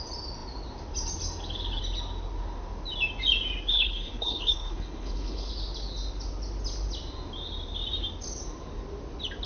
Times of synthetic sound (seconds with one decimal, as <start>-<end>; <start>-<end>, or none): 3.7-5.5